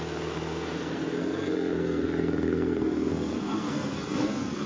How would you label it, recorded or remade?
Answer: remade